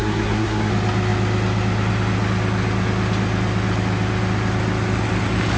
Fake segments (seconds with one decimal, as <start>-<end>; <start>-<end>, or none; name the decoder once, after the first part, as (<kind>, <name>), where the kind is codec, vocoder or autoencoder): 0.0-0.7 (codec, SNAC)